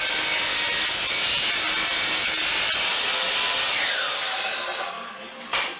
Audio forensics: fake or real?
fake